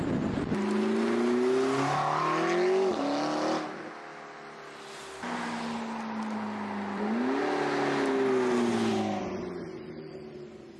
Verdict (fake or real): real